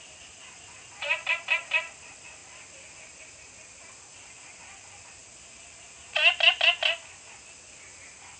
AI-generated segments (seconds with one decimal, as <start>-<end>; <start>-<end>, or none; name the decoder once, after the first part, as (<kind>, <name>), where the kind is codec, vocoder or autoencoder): none